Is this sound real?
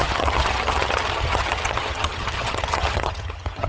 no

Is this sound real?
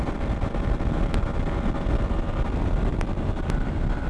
yes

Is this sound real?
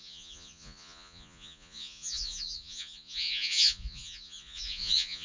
no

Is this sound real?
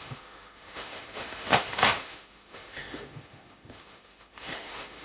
no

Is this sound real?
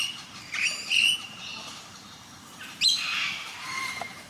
no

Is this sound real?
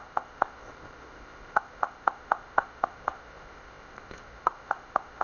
no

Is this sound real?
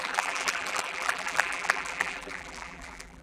no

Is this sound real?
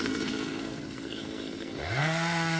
no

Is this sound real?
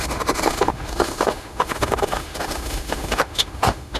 no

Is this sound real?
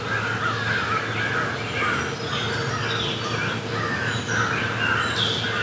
yes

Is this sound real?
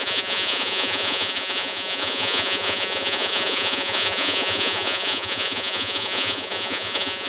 no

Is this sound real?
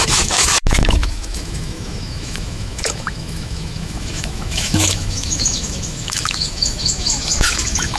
no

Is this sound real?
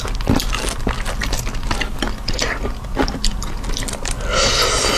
yes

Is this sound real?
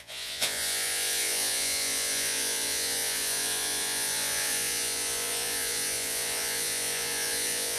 no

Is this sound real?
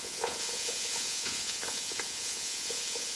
no